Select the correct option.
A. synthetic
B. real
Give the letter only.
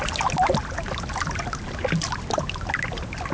B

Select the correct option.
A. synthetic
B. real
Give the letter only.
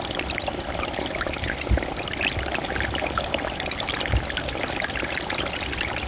B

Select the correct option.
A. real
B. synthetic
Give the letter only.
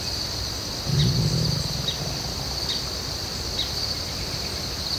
A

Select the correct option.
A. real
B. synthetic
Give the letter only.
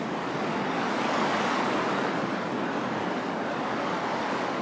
B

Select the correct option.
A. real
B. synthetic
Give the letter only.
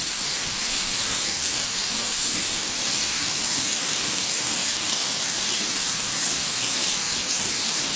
B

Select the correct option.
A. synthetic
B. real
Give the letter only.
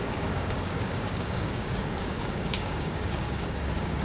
A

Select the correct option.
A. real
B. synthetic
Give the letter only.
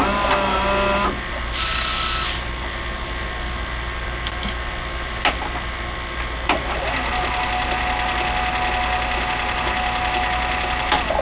A